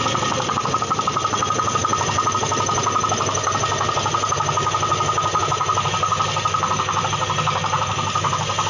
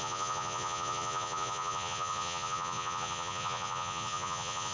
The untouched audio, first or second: first